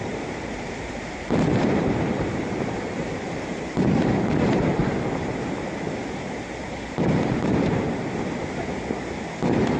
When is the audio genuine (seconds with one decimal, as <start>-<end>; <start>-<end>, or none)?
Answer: 3.6-9.8